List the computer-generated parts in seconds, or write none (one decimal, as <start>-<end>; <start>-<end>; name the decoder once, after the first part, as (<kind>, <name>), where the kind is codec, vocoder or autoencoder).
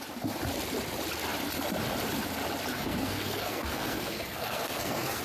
2.7-5.2 (codec, SNAC)